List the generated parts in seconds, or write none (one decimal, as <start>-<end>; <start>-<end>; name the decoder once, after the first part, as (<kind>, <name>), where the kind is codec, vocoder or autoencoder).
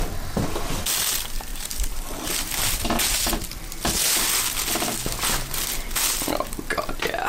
none